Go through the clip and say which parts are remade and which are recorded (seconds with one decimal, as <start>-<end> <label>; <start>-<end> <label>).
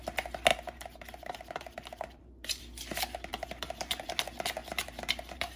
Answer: 0.0-0.5 recorded; 0.5-2.6 remade; 2.6-3.3 recorded; 3.3-4.1 remade; 4.1-4.6 recorded; 4.6-5.6 remade